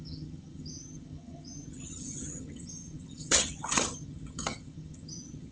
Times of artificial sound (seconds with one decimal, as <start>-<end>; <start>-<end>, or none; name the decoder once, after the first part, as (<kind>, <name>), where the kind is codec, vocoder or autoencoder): 0.0-5.5 (vocoder, HiFi-GAN)